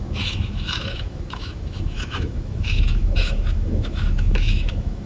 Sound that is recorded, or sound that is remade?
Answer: remade